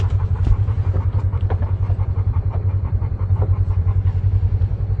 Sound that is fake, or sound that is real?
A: fake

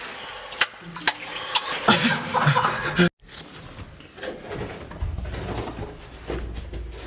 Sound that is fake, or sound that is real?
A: real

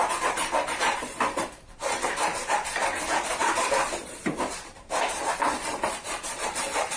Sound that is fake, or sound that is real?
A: fake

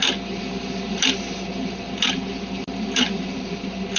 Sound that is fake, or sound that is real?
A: real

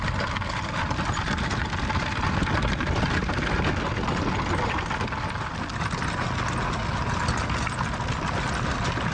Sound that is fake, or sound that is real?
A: real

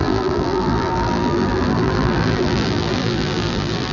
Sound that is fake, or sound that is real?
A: fake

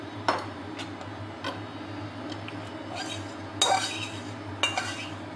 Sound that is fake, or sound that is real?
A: real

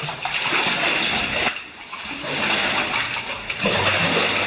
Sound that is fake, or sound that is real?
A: real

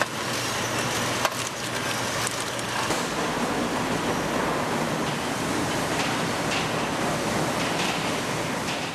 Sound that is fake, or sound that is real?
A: real